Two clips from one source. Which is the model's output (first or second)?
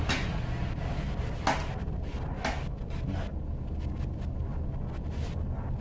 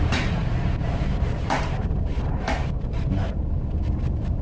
second